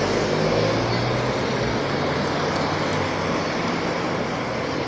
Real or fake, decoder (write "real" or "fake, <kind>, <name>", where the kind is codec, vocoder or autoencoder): real